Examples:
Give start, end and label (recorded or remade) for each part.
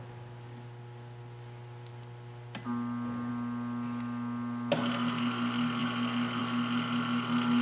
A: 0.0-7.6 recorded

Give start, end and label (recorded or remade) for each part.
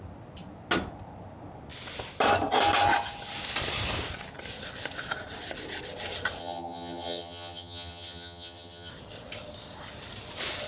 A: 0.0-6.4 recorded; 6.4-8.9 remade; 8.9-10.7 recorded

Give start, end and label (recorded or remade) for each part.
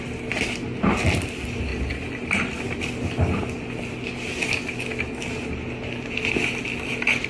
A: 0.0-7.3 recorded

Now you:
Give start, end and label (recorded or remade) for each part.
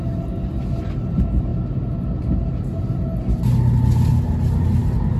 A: 0.0-5.2 recorded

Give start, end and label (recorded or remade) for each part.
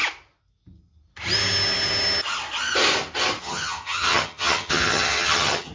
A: 0.0-3.4 recorded; 3.4-5.7 remade